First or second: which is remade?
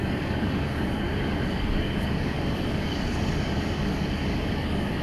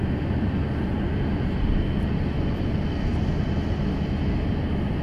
first